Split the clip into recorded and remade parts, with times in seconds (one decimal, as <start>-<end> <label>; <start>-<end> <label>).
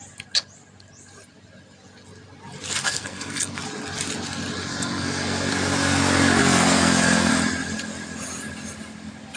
0.0-2.8 recorded; 2.8-3.6 remade; 3.6-4.7 recorded; 4.7-5.5 remade; 5.5-6.4 recorded; 6.4-7.3 remade; 7.3-9.4 recorded